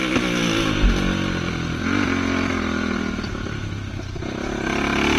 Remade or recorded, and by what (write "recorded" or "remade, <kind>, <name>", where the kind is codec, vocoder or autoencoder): recorded